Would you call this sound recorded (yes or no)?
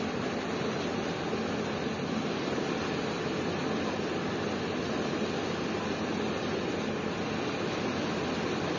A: yes